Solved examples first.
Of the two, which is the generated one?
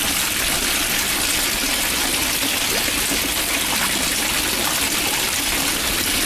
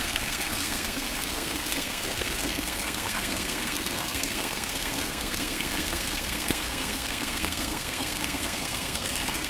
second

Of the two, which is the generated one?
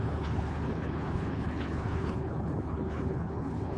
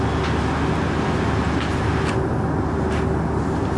first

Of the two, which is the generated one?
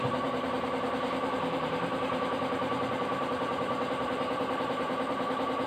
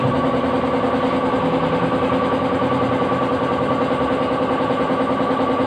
first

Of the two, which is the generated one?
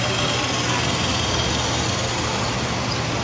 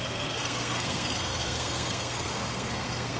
second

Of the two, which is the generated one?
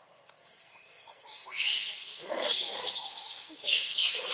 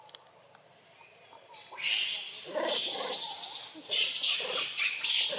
first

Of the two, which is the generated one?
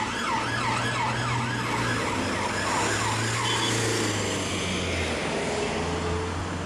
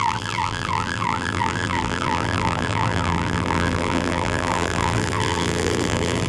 second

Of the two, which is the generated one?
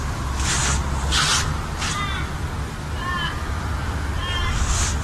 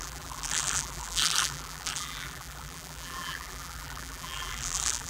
second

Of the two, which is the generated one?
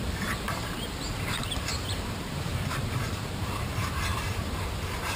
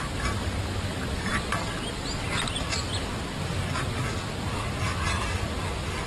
first